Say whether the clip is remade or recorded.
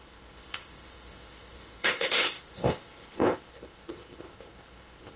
remade